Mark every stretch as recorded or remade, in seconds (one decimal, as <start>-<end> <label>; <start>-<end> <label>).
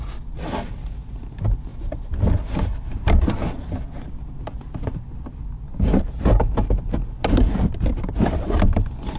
0.0-9.2 recorded